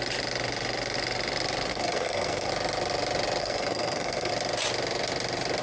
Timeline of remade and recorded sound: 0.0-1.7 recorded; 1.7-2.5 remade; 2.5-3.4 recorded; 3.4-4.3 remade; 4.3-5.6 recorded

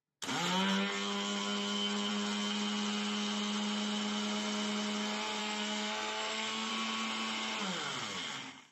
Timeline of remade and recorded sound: 0.0-5.4 recorded; 5.4-6.7 remade; 6.7-8.7 recorded

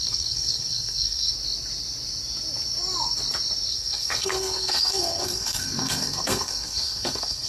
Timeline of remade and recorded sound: 0.0-1.3 remade; 1.3-3.7 recorded; 3.7-7.5 remade

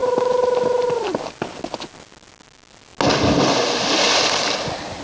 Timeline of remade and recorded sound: 0.0-5.0 recorded

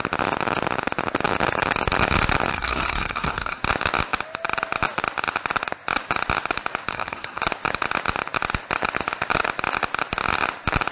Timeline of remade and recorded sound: 0.0-2.5 recorded; 2.5-3.6 remade; 3.6-6.9 recorded; 6.9-7.4 remade; 7.4-10.9 recorded